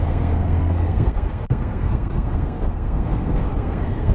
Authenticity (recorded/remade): remade